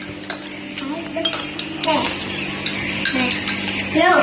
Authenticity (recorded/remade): recorded